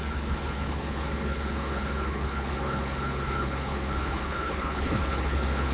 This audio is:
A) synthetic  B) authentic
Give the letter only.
A